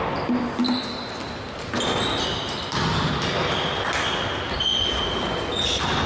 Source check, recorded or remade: recorded